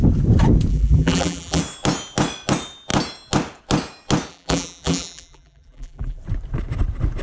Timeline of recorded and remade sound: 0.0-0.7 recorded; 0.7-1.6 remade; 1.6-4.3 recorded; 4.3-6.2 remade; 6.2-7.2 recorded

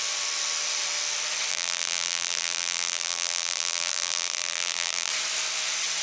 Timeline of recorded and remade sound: 0.0-1.5 recorded; 1.5-5.1 remade; 5.1-6.0 recorded